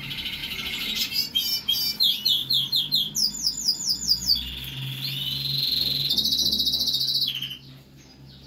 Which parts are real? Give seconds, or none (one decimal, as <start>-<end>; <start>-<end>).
0.0-8.5